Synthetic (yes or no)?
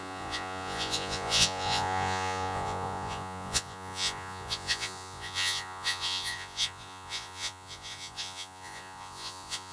yes